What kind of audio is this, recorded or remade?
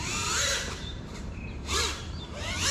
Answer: remade